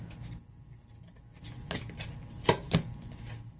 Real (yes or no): yes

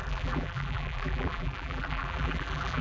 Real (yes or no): no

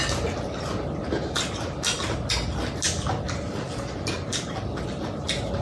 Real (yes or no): yes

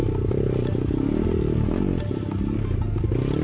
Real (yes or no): yes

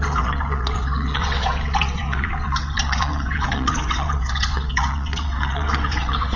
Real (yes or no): no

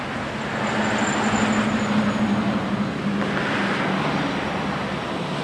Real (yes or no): yes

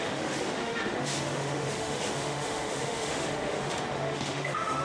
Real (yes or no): no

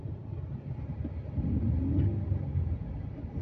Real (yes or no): yes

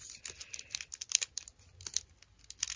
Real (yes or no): yes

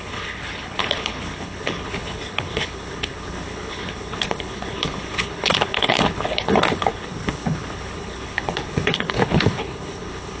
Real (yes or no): no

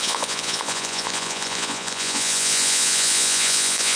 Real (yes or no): no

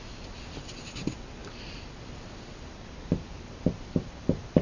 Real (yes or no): yes